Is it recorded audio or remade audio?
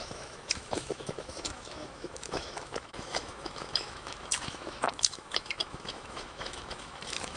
remade